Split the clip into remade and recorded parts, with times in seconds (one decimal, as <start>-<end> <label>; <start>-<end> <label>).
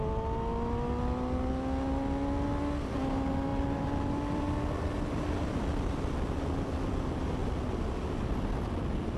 0.0-3.5 recorded; 3.5-6.4 remade; 6.4-9.2 recorded